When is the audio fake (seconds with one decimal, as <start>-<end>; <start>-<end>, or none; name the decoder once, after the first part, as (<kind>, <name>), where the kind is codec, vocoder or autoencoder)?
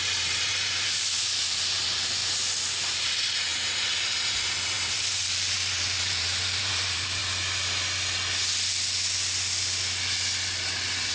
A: 0.0-2.2 (vocoder, BigVGAN v2); 3.0-7.2